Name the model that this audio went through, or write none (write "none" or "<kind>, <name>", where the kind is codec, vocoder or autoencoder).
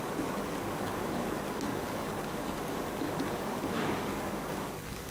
codec, DAC